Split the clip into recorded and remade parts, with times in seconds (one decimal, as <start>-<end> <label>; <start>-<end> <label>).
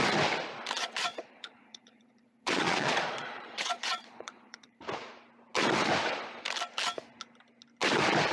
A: 0.0-0.8 recorded; 0.8-4.8 remade; 4.8-8.3 recorded